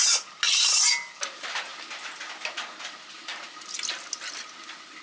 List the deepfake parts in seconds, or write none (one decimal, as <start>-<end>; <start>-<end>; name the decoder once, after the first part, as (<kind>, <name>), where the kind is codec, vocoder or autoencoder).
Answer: none